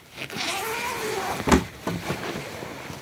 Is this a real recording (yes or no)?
yes